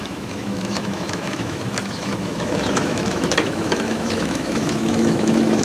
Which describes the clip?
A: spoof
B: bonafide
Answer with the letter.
A